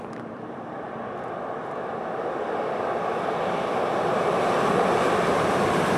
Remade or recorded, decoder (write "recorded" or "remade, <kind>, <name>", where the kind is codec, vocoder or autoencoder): remade, vocoder, BigVGAN v2